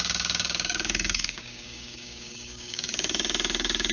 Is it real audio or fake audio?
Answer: fake